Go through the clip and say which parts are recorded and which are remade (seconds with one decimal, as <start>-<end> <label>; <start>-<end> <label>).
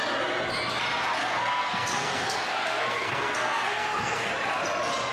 0.0-1.2 recorded; 1.2-4.3 remade; 4.3-5.1 recorded